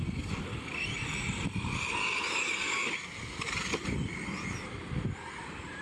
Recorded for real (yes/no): yes